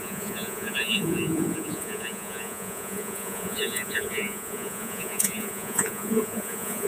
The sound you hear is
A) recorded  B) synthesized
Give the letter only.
B